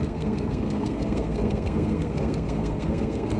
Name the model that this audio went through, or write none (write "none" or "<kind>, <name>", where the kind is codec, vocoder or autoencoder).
codec, SNAC